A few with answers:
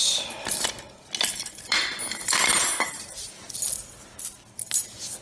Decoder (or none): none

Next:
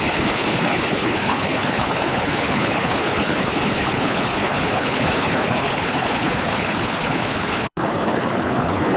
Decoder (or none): codec, HILCodec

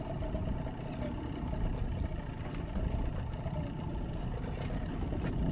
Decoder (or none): none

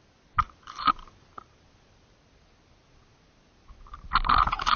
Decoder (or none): none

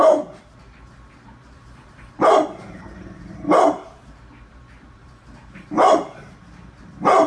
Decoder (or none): vocoder, BigVGAN v2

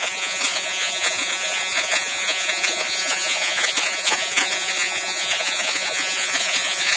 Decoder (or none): vocoder, Vocos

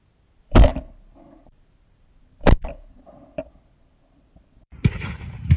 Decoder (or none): vocoder, BigVGAN v2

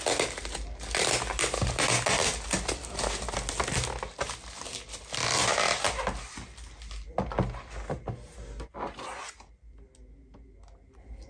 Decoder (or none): none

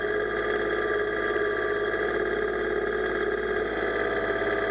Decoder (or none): none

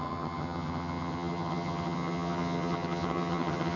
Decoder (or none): vocoder, HiFi-GAN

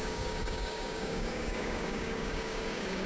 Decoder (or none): codec, DAC